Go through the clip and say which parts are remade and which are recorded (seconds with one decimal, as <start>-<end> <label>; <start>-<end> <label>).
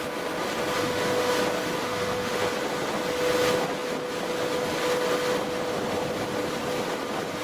0.0-0.8 recorded; 0.8-1.3 remade; 1.3-1.8 recorded; 1.8-2.5 remade; 2.5-7.4 recorded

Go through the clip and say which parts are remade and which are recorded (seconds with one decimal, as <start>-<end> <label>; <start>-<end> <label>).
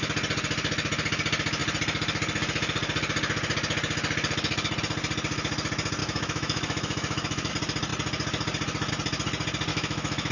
0.0-6.0 recorded; 6.0-7.5 remade; 7.5-9.7 recorded; 9.7-10.3 remade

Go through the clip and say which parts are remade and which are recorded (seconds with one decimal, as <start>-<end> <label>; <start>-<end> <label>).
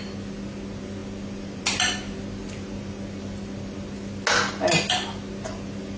0.0-6.0 recorded